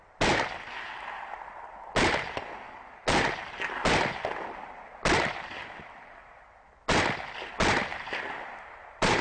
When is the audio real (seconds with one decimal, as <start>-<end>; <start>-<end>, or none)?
0.0-7.9